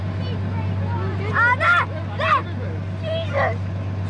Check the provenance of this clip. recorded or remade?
recorded